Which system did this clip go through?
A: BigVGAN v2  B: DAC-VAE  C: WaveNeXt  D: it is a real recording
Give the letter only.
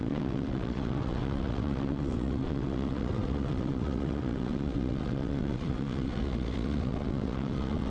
C